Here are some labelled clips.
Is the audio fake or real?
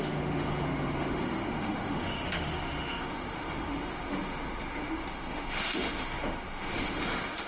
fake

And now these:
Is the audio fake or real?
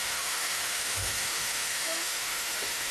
fake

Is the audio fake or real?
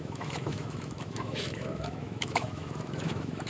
fake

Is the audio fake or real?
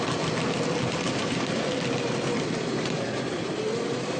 real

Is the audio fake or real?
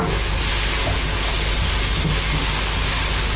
real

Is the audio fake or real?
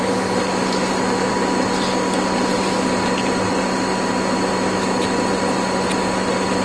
real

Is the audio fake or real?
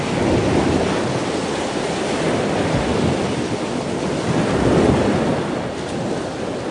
real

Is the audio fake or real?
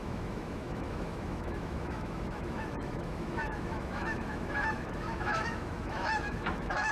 fake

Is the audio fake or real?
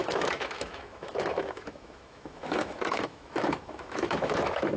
fake